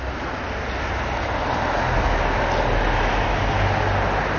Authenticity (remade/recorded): recorded